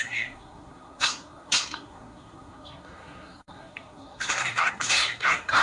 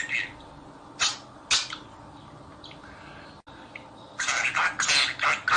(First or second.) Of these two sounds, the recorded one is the second